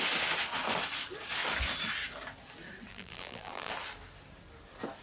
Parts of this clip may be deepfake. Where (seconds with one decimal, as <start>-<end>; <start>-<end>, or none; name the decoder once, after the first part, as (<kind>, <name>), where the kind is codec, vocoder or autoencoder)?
2.9-3.7 (vocoder, BigVGAN v2)